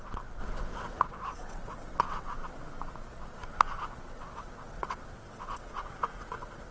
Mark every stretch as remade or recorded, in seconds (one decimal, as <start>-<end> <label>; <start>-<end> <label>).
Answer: 0.0-2.4 remade; 2.4-4.4 recorded; 4.4-6.7 remade